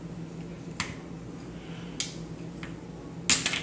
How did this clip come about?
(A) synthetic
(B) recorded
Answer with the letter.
B